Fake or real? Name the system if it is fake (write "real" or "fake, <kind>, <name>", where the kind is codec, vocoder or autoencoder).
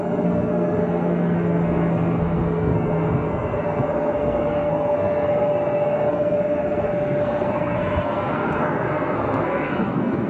fake, codec, SNAC